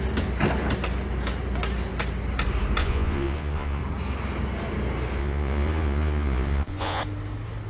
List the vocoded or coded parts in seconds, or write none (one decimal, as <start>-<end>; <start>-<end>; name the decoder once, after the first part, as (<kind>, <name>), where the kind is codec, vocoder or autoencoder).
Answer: 2.8-3.8 (vocoder, Vocos); 5.2-7.0